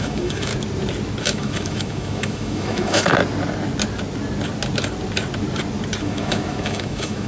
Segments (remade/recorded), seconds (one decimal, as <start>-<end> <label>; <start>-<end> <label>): 0.0-0.5 remade; 0.5-1.2 recorded; 1.2-3.1 remade; 3.1-6.0 recorded; 6.0-7.3 remade